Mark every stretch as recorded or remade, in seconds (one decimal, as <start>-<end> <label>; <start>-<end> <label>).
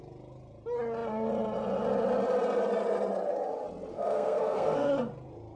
0.0-3.9 recorded; 3.9-4.9 remade; 4.9-5.6 recorded